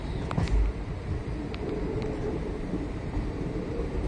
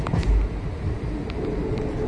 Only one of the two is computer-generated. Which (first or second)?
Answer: first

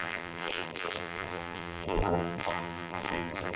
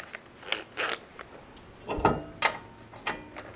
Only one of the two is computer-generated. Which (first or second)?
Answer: first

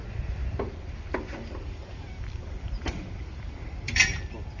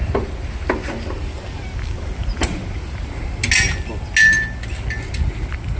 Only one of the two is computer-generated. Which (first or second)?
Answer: first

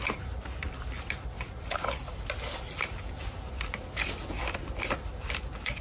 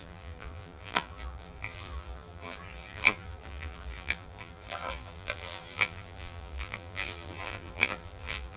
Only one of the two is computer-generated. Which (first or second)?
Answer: second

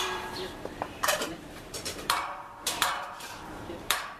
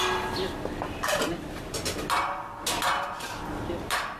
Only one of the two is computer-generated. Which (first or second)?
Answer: first